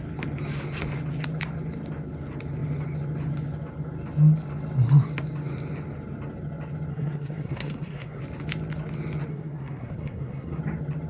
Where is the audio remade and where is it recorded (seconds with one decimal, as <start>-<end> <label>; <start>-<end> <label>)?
0.0-6.9 recorded; 6.9-8.2 remade; 8.2-9.3 recorded; 9.3-10.6 remade; 10.6-11.1 recorded